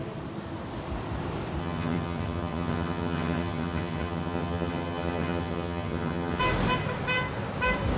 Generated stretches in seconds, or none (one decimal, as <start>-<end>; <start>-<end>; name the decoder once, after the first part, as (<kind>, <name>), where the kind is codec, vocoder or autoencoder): 1.6-6.4 (vocoder, HiFi-GAN)